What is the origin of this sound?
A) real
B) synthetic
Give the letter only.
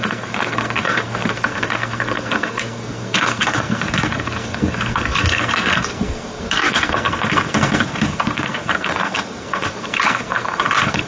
B